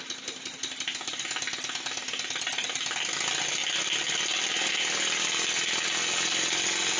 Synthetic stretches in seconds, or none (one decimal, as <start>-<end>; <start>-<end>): 3.6-4.7